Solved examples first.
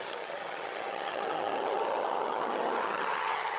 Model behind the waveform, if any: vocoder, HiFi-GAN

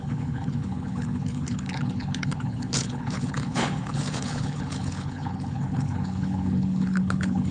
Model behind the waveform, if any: codec, HILCodec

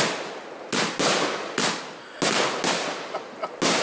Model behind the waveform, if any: none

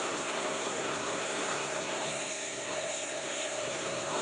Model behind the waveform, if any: codec, SNAC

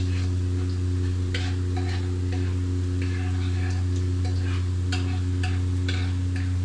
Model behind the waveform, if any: none